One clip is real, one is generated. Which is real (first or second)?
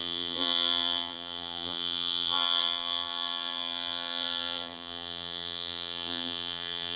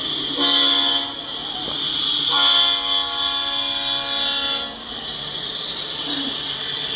second